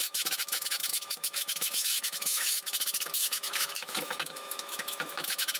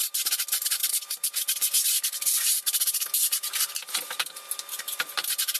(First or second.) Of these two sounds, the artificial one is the first